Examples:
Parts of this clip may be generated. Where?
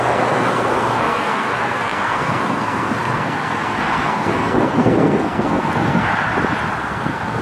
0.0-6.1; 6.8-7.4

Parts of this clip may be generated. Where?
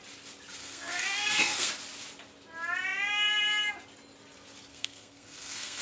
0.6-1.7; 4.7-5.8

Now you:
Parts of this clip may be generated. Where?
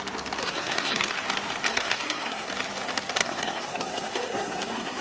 0.4-1.1; 1.7-2.5; 3.2-5.0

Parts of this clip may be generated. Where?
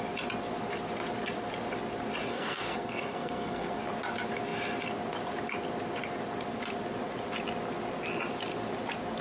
2.3-3.8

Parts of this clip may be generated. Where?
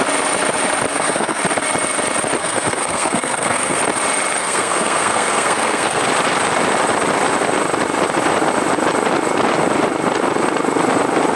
0.9-1.4; 2.4-3.8; 4.4-6.0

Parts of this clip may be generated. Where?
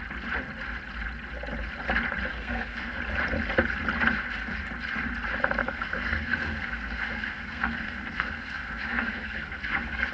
2.3-3.0; 5.6-10.1